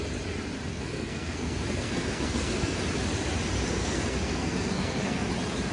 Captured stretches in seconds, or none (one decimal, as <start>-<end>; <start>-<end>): 0.0-0.7; 2.8-3.8; 5.3-5.7